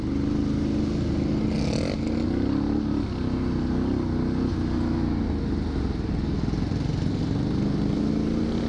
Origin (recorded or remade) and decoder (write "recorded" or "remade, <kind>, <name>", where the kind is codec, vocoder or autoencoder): recorded